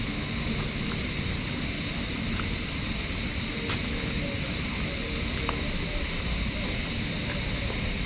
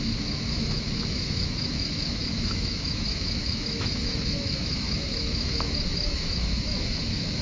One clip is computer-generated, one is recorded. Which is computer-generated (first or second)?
second